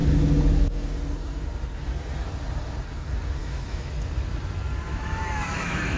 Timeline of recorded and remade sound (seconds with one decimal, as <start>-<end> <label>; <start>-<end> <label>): 0.0-3.4 recorded; 3.4-3.9 remade; 3.9-4.9 recorded; 4.9-6.0 remade